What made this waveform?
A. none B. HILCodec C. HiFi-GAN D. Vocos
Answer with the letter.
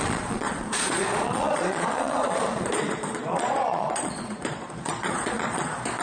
D